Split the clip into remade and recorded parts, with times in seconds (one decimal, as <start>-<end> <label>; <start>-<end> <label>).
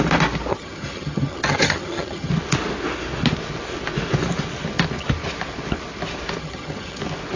0.0-0.5 recorded; 0.5-2.3 remade; 2.3-6.4 recorded; 6.4-7.0 remade; 7.0-7.4 recorded